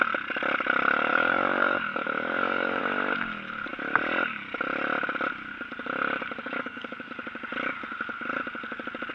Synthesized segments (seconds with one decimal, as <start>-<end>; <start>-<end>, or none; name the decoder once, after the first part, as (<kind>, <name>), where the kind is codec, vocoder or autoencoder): 1.1-2.8 (codec, DAC); 6.4-7.1